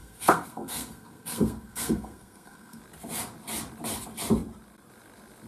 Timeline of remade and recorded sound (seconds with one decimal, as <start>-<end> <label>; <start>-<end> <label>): 0.0-2.8 remade; 2.8-5.5 recorded